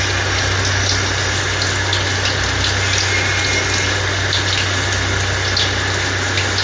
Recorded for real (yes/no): yes